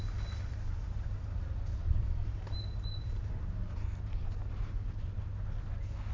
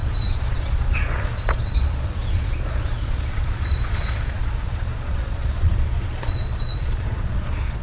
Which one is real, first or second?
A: first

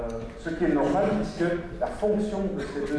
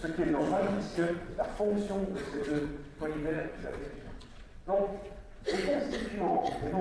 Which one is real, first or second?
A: first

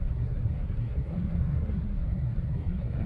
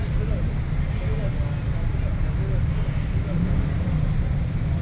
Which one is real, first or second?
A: second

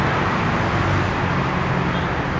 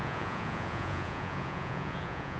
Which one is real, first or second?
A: first